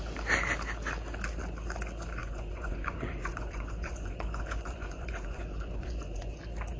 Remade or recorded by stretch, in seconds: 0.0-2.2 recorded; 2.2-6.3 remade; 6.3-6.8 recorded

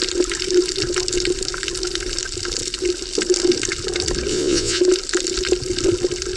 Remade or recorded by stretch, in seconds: 0.0-4.3 recorded; 4.3-4.8 remade; 4.8-6.4 recorded

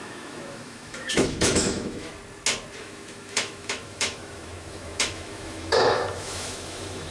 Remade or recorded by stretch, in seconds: 0.0-2.1 remade; 2.1-2.8 recorded; 2.8-7.1 remade

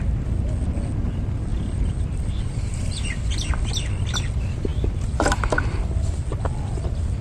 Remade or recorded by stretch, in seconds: 0.0-1.5 recorded; 1.5-4.2 remade; 4.2-7.2 recorded

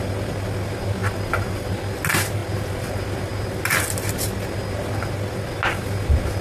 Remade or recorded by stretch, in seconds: 0.0-1.0 recorded; 1.0-1.7 remade; 1.7-6.4 recorded

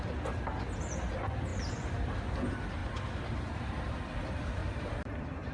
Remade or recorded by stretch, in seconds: 0.0-1.5 recorded; 1.5-2.1 remade; 2.1-2.8 recorded; 2.8-3.9 remade; 3.9-4.6 recorded; 4.6-5.5 remade

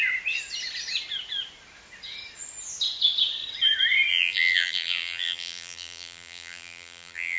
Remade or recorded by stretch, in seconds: 0.0-4.1 recorded; 4.1-7.4 remade

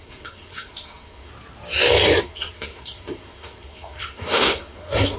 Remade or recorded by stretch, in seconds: 0.0-1.3 remade; 1.3-2.2 recorded; 2.2-5.2 remade